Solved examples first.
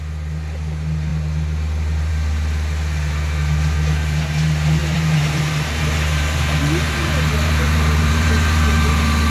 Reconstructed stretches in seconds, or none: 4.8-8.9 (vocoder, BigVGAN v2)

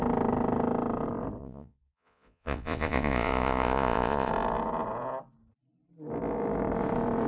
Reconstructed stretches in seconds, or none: 1.4-4.3 (vocoder, Vocos)